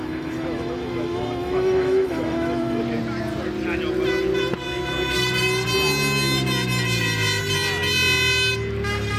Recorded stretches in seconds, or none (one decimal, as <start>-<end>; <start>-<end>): 2.8-9.2